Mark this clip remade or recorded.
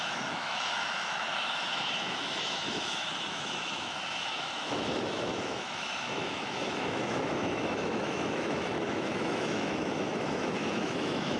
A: remade